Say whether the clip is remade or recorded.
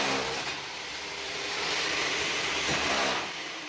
remade